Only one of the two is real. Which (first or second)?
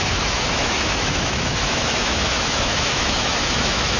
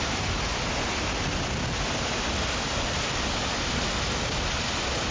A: second